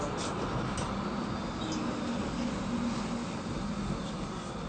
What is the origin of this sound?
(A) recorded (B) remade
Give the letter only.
A